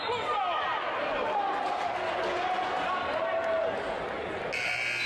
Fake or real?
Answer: real